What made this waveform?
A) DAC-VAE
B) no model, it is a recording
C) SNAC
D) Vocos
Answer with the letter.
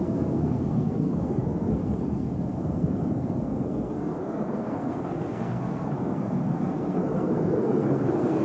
C